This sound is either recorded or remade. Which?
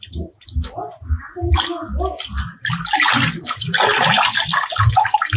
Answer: recorded